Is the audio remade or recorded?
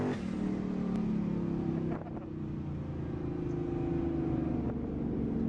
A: recorded